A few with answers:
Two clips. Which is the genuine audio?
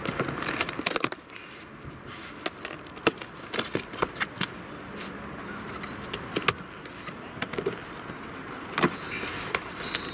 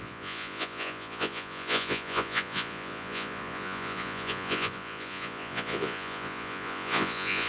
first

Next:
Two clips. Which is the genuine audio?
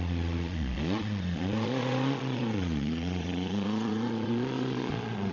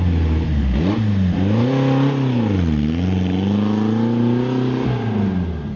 second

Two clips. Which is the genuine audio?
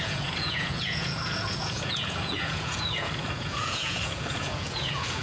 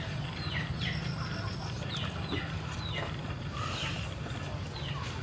second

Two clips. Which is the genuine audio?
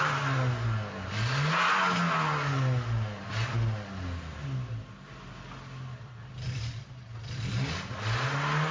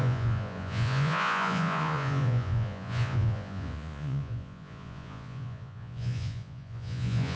first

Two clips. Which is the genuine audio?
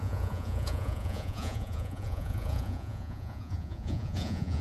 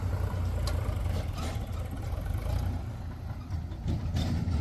second